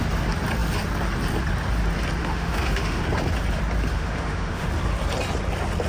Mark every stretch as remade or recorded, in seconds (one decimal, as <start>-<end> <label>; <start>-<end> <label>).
0.0-2.2 recorded; 2.2-3.0 remade; 3.0-3.9 recorded; 3.9-4.7 remade; 4.7-5.9 recorded